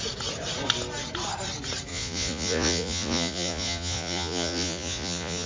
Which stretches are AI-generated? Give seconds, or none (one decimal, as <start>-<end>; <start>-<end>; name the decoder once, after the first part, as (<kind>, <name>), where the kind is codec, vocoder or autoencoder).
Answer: 1.9-5.5 (vocoder, Vocos)